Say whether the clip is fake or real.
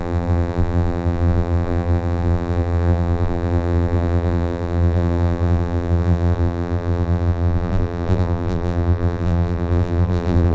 fake